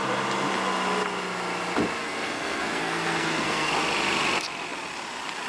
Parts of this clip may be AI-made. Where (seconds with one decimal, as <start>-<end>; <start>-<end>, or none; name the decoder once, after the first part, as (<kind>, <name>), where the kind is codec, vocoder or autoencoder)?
2.0-3.7 (codec, SNAC)